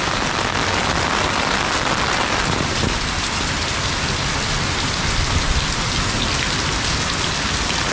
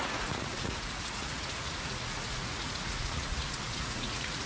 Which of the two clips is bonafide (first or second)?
first